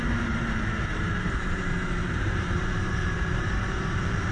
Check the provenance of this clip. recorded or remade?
remade